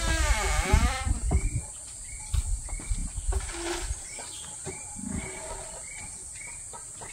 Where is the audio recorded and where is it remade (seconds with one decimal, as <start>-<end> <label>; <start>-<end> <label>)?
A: 0.0-7.1 recorded